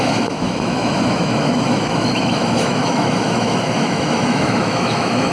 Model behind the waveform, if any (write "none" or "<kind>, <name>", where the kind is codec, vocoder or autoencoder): autoencoder, DAC-VAE